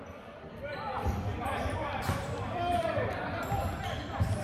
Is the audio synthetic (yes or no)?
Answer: yes